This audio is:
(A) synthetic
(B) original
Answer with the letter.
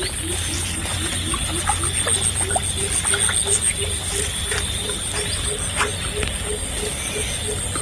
B